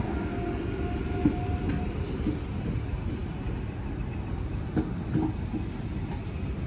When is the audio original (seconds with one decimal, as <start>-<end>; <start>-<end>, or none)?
0.0-6.7